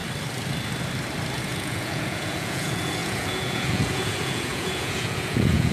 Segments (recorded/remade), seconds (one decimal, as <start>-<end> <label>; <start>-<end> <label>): 0.0-1.4 recorded; 1.4-5.7 remade